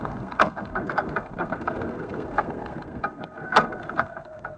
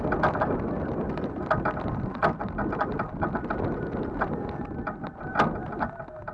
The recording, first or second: second